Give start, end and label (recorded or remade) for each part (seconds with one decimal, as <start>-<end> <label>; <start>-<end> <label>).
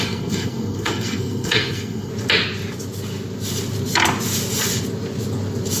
0.0-2.1 remade; 2.1-5.8 recorded